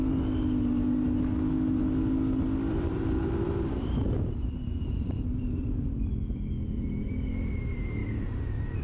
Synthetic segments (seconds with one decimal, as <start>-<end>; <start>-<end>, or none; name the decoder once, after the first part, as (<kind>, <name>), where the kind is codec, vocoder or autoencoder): 2.7-5.8 (vocoder, BigVGAN v2); 8.0-8.8